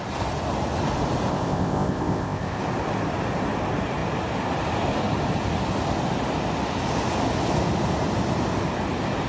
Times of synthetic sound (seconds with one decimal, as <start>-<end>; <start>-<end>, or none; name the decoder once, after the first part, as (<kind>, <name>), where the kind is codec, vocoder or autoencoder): 1.3-2.6 (codec, ZipCodec)